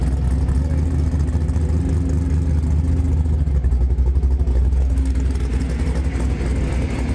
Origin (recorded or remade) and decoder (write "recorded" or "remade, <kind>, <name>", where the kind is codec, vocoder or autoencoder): recorded